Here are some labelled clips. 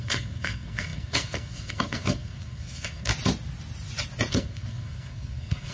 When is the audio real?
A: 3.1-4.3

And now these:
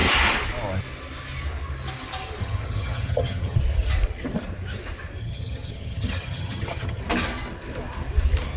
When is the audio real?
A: 0.0-2.4; 3.6-5.2; 7.0-8.6

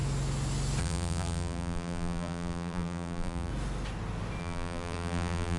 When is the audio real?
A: 0.0-0.8; 3.5-4.4